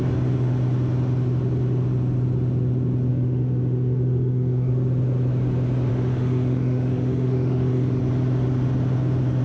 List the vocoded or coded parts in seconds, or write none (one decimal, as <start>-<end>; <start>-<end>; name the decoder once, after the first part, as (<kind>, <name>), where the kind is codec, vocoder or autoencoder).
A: 3.1-4.7 (autoencoder, DAC-VAE); 5.9-8.0